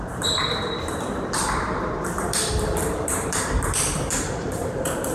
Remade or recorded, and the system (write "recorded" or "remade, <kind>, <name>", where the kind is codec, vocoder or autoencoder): remade, vocoder, BigVGAN v2